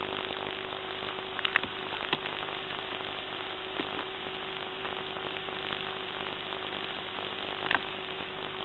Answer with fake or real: real